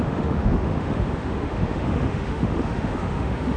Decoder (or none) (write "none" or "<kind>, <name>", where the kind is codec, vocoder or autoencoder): autoencoder, DAC-VAE